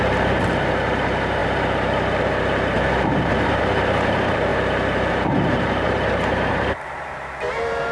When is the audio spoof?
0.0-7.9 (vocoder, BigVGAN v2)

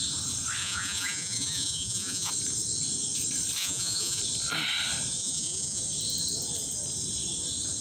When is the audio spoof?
0.6-2.3 (vocoder, Vocos); 3.6-4.2; 5.2-5.8